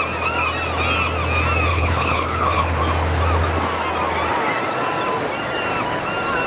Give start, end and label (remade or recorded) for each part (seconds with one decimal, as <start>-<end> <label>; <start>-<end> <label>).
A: 0.0-1.7 recorded; 1.7-2.8 remade; 2.8-6.5 recorded